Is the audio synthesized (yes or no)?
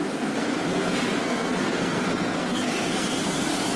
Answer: yes